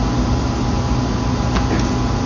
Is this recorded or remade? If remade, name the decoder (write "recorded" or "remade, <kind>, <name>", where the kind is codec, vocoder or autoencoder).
recorded